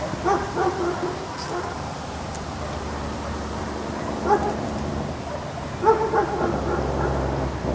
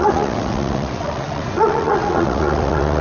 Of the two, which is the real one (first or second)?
first